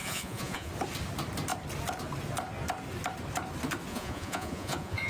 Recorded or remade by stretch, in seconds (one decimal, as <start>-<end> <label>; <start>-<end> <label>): 0.0-0.7 remade; 0.7-3.9 recorded; 3.9-5.1 remade